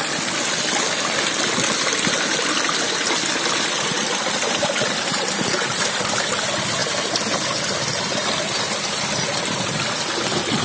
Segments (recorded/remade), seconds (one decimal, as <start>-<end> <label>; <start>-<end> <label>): 0.0-10.6 recorded